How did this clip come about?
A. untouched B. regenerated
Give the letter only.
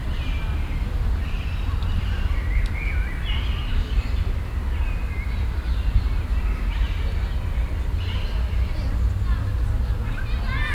A